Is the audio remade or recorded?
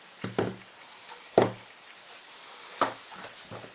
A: recorded